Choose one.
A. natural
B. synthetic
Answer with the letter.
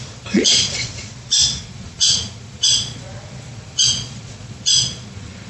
B